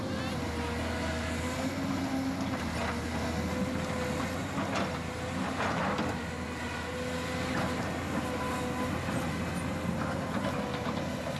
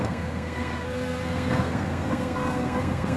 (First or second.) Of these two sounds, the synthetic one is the second